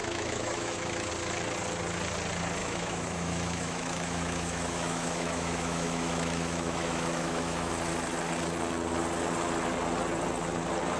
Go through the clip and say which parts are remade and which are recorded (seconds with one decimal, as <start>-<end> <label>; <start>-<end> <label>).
0.0-1.1 remade; 1.1-2.6 recorded; 2.6-7.7 remade; 7.7-11.0 recorded